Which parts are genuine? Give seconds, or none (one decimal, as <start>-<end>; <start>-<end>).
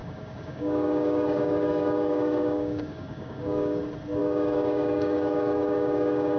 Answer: 3.8-4.2